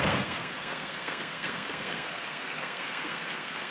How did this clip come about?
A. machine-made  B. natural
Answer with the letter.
A